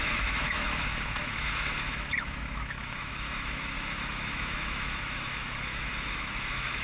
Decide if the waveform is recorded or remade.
remade